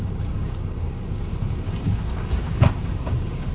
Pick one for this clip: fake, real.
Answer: fake